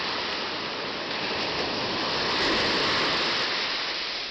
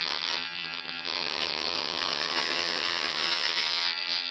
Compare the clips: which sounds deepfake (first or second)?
second